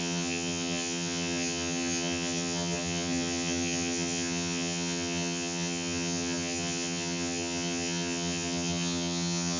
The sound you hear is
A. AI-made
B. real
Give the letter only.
A